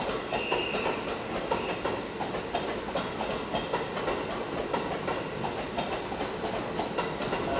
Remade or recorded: recorded